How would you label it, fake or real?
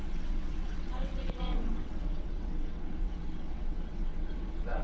fake